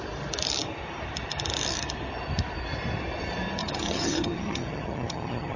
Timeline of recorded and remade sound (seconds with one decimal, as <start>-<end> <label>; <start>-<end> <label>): 0.0-3.6 recorded; 3.6-5.6 remade